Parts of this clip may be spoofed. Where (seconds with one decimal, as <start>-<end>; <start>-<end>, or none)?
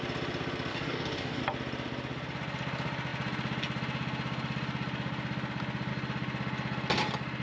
0.7-1.4